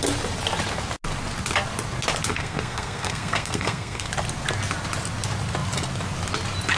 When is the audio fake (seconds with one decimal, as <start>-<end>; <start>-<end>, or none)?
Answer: 2.3-4.1